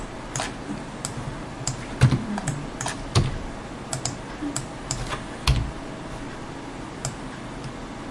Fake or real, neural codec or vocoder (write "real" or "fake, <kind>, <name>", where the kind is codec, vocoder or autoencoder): real